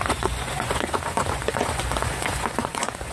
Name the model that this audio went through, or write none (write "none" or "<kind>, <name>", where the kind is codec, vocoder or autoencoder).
vocoder, Vocos